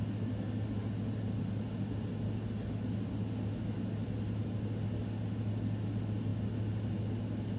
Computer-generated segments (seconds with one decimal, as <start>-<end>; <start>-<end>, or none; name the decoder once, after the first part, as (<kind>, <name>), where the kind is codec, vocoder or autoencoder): none